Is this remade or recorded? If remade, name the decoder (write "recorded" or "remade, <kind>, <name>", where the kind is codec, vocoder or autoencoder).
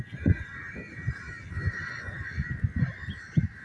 recorded